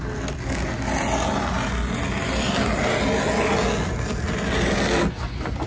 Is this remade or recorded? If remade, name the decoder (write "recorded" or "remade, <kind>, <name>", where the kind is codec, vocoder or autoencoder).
recorded